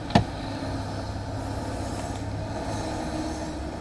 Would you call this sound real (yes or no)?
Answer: yes